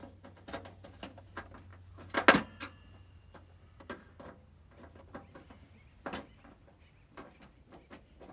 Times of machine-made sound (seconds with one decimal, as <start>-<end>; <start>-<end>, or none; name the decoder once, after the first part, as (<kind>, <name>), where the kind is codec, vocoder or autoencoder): 6.6-8.3 (vocoder, BigVGAN v2)